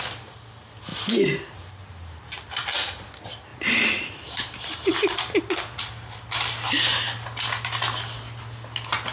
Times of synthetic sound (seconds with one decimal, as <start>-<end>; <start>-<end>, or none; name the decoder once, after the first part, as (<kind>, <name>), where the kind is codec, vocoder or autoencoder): 0.9-2.4 (vocoder, BigVGAN v2); 3.5-5.4